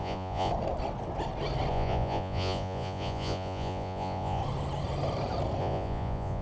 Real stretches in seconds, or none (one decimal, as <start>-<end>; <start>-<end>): 0.5-1.7; 4.4-5.6